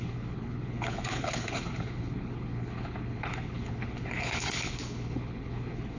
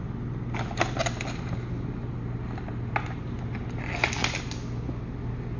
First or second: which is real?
second